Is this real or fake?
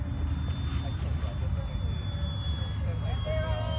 real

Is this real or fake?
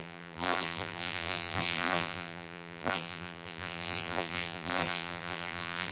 fake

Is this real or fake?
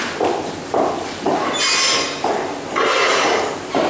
real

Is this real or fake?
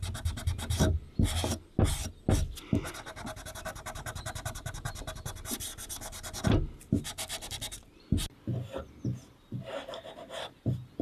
real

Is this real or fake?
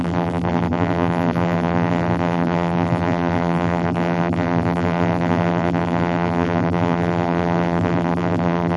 fake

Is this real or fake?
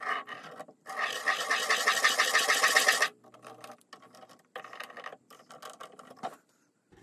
real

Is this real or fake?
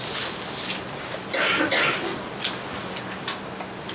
real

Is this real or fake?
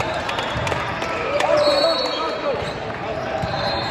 fake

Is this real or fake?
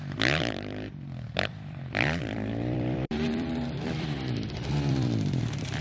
fake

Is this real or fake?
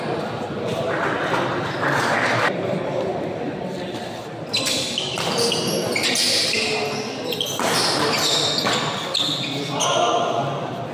real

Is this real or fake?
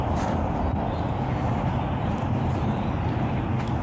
real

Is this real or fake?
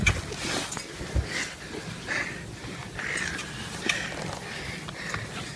real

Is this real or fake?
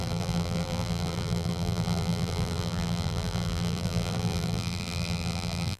fake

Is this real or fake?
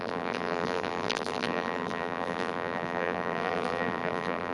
fake